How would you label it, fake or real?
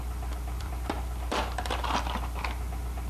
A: fake